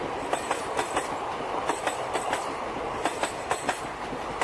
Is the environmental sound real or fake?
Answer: real